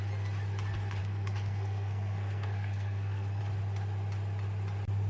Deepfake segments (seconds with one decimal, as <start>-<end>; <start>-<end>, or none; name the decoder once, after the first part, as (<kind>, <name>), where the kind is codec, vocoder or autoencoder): 1.0-3.4 (codec, SNAC)